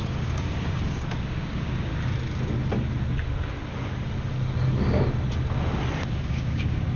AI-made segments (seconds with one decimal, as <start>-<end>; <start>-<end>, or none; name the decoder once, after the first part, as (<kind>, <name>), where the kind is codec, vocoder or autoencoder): 0.0-1.9 (codec, DAC); 6.1-7.0